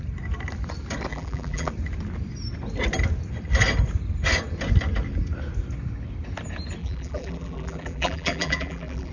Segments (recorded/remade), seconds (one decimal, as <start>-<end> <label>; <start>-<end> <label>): 0.0-1.1 recorded; 1.1-1.7 remade; 1.7-6.8 recorded; 6.8-9.1 remade